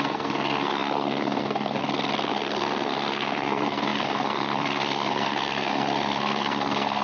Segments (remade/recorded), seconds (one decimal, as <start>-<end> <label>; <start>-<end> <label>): 0.0-1.8 remade; 1.8-2.3 recorded; 2.3-7.0 remade